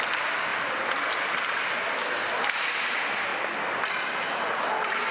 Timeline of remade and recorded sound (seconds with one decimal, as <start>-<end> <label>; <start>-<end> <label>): 0.0-5.1 recorded